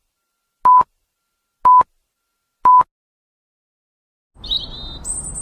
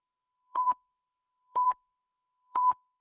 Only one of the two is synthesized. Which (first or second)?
second